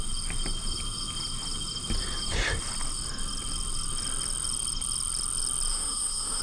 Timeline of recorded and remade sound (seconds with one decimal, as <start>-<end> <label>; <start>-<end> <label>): 0.0-5.7 recorded; 5.7-6.4 remade